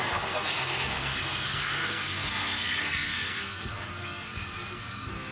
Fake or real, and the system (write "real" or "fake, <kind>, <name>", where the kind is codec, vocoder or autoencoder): fake, codec, SNAC